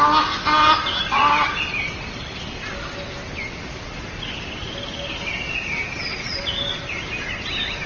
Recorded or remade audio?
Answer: recorded